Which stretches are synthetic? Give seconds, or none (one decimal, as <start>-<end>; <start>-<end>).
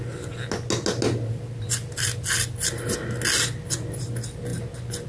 none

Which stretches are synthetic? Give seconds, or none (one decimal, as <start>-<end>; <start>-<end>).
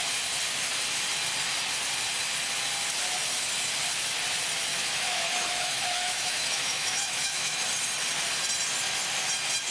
4.7-7.6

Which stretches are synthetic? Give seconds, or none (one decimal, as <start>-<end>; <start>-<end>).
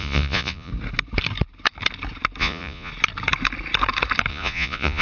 0.0-0.7; 2.4-2.9; 4.3-5.0